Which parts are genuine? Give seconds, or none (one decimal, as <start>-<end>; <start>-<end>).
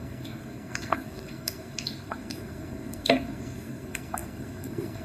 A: none